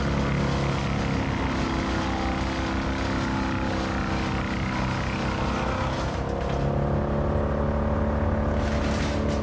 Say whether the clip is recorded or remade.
recorded